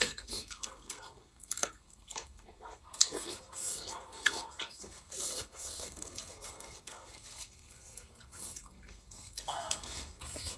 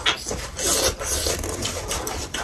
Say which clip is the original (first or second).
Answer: second